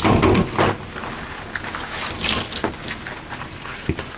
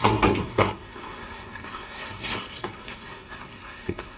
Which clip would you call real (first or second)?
first